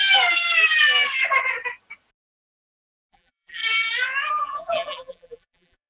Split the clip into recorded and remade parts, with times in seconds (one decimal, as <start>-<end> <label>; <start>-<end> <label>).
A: 0.0-3.1 recorded; 3.1-3.6 remade; 3.6-4.3 recorded; 4.3-5.9 remade